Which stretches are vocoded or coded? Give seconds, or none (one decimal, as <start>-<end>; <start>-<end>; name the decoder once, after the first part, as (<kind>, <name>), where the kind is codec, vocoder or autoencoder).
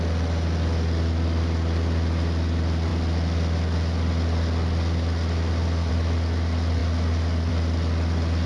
none